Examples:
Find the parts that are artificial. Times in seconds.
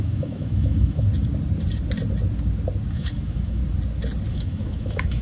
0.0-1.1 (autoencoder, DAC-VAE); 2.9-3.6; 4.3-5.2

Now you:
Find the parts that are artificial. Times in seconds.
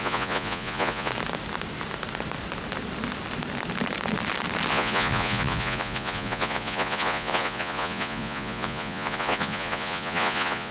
0.0-1.1 (vocoder, Vocos); 4.7-10.7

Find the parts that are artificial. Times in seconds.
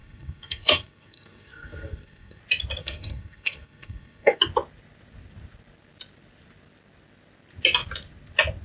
0.0-2.4 (codec, SNAC); 2.8-4.4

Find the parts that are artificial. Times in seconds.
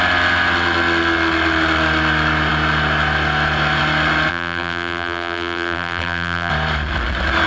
4.3-6.5 (vocoder, BigVGAN v2)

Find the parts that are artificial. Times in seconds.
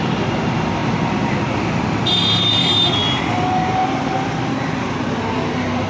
none